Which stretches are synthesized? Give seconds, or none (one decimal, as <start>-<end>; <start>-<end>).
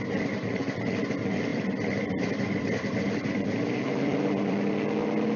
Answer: 1.5-4.7